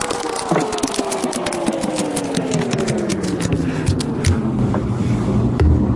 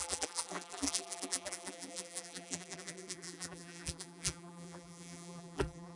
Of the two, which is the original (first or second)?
first